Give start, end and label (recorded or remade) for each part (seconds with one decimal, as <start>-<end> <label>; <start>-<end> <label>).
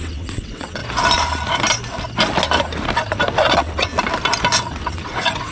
0.0-0.8 remade; 0.8-3.5 recorded; 3.5-3.9 remade; 3.9-4.7 recorded; 4.7-5.5 remade